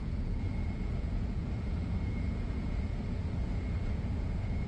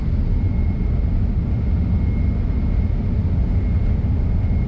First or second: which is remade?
first